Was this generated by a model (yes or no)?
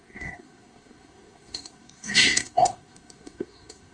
yes